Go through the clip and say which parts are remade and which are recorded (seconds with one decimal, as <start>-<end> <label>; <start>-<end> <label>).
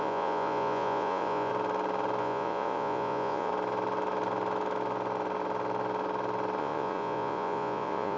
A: 0.0-1.5 remade; 1.5-2.2 recorded; 2.2-3.5 remade; 3.5-6.6 recorded; 6.6-8.2 remade